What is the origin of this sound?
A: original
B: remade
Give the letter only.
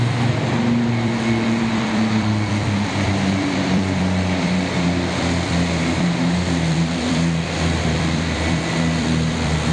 B